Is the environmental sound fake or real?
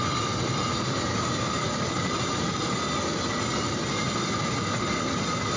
real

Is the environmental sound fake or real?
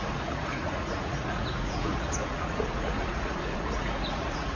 fake